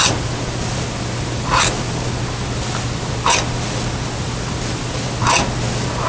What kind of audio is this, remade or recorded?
recorded